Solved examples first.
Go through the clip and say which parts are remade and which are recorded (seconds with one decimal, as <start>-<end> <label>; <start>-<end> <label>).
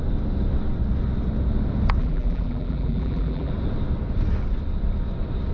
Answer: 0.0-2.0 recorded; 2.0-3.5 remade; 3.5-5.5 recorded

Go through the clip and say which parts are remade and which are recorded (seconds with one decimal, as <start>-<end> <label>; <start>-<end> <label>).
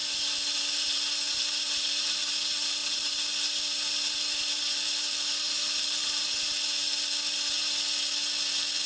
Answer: 0.0-2.3 remade; 2.3-2.8 recorded; 2.8-6.5 remade; 6.5-8.9 recorded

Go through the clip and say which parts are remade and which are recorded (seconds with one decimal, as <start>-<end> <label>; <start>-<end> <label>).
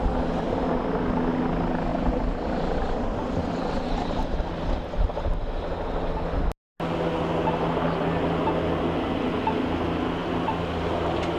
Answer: 0.0-1.9 recorded; 1.9-4.4 remade; 4.4-11.4 recorded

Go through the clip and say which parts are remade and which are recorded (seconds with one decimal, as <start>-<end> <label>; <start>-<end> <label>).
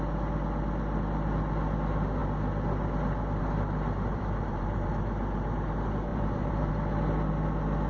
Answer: 0.0-4.1 recorded; 4.1-4.9 remade; 4.9-6.1 recorded; 6.1-6.7 remade; 6.7-7.9 recorded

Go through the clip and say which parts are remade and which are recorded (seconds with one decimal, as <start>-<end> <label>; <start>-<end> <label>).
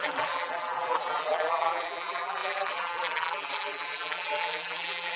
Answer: 0.0-5.2 remade